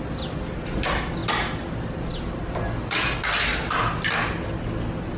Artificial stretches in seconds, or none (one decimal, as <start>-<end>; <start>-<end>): none